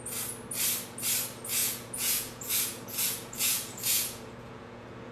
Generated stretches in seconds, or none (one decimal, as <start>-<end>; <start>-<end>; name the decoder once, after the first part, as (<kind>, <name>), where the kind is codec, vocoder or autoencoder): 1.6-5.1 (vocoder, Vocos)